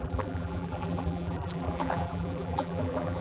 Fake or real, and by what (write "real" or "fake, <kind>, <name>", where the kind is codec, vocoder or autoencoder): fake, vocoder, BigVGAN v2